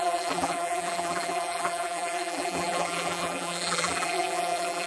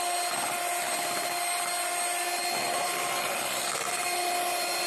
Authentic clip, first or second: second